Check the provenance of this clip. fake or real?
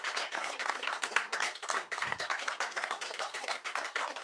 fake